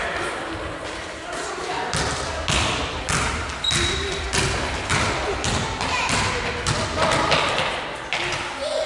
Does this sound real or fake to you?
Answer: real